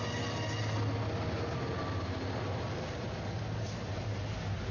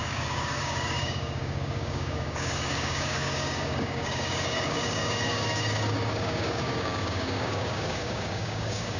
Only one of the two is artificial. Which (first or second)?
second